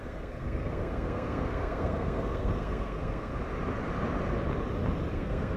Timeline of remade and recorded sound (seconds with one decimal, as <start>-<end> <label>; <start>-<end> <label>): 0.0-3.3 remade; 3.3-5.1 recorded; 5.1-5.6 remade